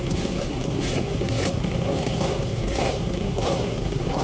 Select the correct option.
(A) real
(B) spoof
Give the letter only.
B